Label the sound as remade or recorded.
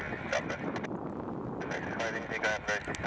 recorded